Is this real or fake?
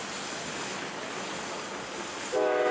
real